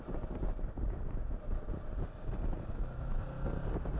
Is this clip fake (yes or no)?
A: no